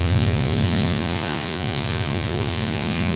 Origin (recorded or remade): remade